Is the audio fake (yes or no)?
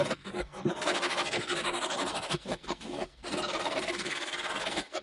yes